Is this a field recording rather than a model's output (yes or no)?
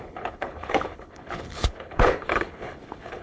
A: no